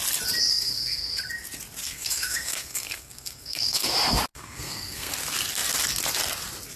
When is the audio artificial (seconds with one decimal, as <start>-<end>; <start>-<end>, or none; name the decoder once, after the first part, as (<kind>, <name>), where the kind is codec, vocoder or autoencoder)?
0.5-1.2 (codec, SNAC); 1.8-3.9; 4.3-5.1